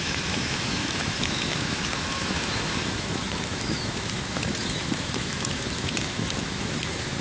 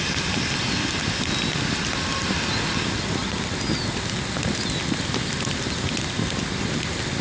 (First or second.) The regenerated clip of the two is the first